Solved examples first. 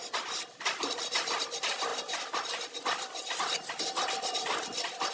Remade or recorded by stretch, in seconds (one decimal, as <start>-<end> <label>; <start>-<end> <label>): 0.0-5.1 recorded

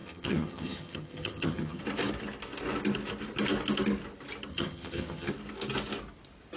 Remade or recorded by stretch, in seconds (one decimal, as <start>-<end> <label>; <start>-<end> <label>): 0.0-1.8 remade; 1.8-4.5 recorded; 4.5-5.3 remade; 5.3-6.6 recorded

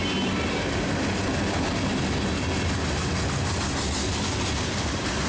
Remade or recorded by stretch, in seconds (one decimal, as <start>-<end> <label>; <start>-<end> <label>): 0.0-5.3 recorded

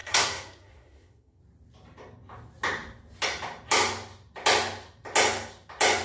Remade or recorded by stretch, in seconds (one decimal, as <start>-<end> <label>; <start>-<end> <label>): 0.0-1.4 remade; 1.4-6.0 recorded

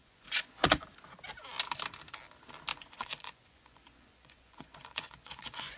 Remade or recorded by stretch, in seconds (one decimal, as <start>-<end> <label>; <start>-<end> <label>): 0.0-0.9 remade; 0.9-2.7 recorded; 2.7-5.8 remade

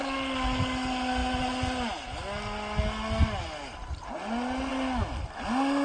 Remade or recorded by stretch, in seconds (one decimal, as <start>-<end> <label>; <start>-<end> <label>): 0.0-5.8 recorded

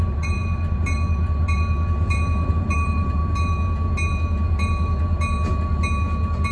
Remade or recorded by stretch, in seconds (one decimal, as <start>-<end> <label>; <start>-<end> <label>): 0.0-0.4 remade; 0.4-2.5 recorded; 2.5-3.2 remade; 3.2-6.5 recorded

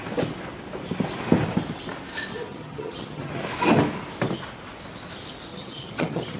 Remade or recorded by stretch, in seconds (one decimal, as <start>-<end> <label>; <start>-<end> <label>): 0.0-2.5 recorded; 2.5-3.4 remade; 3.4-5.5 recorded; 5.5-6.4 remade